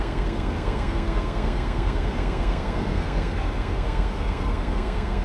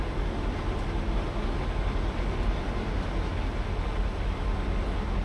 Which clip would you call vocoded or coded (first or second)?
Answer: first